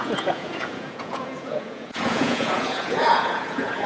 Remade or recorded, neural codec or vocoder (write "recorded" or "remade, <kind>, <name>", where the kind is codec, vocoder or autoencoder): remade, vocoder, Vocos